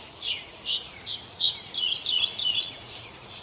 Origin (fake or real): fake